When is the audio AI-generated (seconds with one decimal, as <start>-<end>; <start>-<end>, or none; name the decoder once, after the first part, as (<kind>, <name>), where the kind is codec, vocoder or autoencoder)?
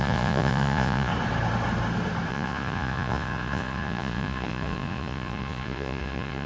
0.0-1.1 (vocoder, Vocos); 2.3-6.5